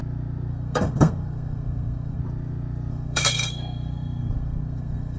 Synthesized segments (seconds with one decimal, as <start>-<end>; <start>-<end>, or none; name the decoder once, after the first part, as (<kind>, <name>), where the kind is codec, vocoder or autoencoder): 0.5-2.2 (codec, SNAC); 2.9-5.2